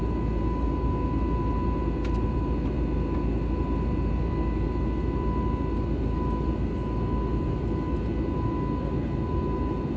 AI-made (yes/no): no